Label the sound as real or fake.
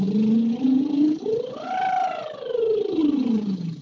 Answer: real